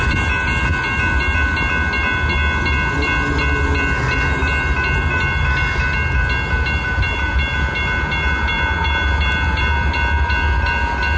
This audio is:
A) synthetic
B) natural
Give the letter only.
B